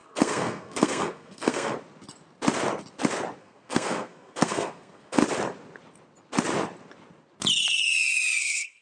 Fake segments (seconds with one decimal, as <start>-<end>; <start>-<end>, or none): 0.0-1.7; 3.4-5.2; 8.4-8.8